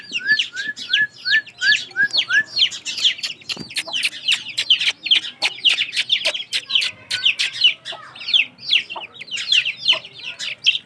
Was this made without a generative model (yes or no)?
yes